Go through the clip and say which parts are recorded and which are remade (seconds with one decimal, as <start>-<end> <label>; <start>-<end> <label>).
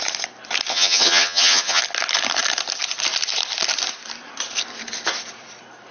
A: 0.0-0.7 recorded; 0.7-1.8 remade; 1.8-5.9 recorded